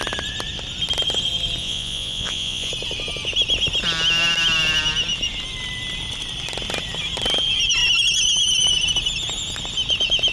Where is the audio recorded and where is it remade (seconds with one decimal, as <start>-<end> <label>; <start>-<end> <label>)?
0.0-1.6 recorded; 1.6-2.7 remade; 2.7-10.3 recorded